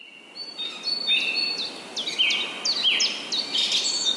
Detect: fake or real real